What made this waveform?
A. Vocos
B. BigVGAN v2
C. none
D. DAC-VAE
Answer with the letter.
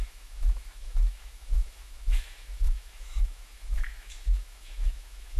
D